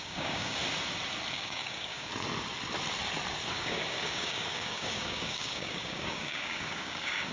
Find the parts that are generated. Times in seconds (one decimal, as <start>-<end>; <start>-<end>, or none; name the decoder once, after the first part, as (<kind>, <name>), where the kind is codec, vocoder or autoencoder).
0.0-0.6 (codec, DAC); 1.3-2.1; 3.5-7.3